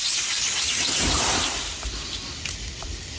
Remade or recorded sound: recorded